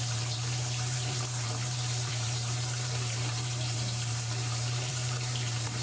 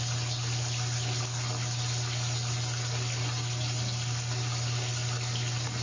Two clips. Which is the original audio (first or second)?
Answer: second